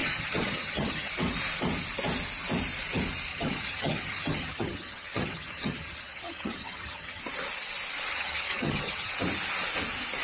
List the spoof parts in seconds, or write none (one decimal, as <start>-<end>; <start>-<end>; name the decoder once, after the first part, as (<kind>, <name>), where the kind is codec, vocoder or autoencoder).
0.0-1.1 (vocoder, HiFi-GAN); 3.3-7.2; 8.1-9.1